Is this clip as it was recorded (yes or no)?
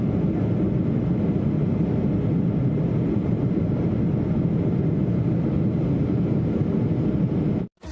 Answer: yes